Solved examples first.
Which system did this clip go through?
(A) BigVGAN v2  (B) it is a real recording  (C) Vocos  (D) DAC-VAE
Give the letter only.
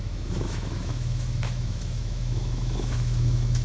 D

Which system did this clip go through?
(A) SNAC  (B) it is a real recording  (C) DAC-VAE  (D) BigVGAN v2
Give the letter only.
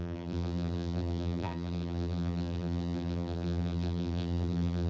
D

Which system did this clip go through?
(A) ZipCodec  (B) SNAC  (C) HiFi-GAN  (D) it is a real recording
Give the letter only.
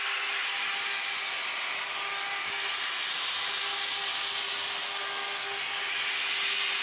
D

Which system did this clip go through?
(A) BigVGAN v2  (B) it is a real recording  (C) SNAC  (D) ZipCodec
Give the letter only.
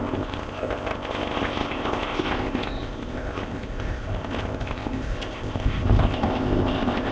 D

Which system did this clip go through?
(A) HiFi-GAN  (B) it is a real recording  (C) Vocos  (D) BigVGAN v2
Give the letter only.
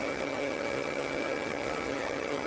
A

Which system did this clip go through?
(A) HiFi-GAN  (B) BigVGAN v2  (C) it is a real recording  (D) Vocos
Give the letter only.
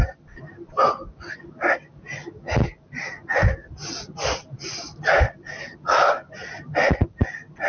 C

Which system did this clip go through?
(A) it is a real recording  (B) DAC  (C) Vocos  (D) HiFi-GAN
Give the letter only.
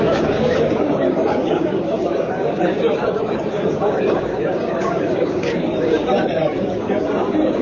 B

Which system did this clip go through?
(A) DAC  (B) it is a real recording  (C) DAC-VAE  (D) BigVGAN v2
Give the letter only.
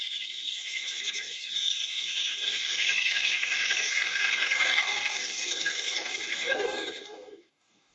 A